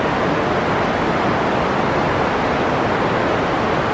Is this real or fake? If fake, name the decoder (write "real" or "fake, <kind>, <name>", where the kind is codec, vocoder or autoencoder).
real